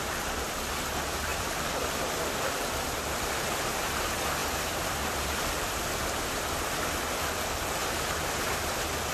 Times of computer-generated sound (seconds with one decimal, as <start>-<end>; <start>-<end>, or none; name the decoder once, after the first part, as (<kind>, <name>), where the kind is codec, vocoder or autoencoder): 0.0-7.8 (vocoder, BigVGAN v2); 8.7-9.1